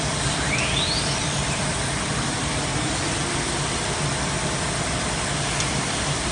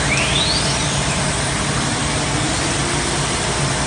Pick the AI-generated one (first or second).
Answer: first